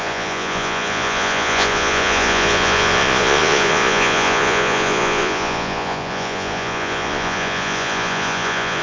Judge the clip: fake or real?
fake